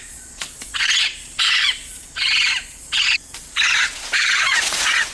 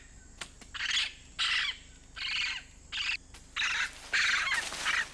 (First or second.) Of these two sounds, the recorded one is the second